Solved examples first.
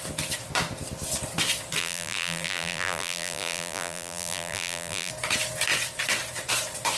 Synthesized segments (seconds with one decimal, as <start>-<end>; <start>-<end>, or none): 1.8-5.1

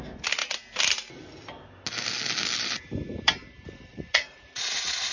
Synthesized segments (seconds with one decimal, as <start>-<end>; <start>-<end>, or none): 3.9-5.1

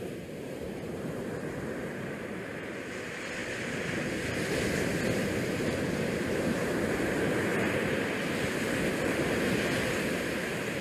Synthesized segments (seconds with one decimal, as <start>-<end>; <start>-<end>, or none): 0.0-3.4; 5.9-7.5; 9.4-10.8

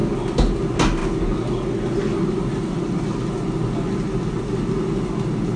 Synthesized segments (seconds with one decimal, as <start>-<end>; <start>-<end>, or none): none

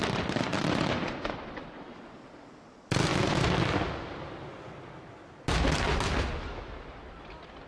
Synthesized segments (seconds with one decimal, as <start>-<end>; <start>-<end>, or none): 0.0-3.1; 7.2-7.7

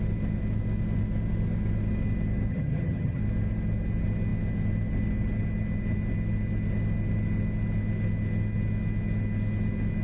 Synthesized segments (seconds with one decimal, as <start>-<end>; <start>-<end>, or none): 2.5-3.2

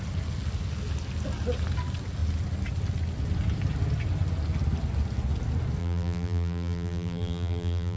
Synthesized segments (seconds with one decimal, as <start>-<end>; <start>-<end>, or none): 5.8-8.0